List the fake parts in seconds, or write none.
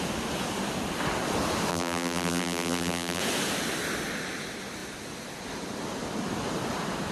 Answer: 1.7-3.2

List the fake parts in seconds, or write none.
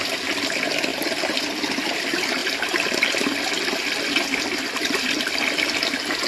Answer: none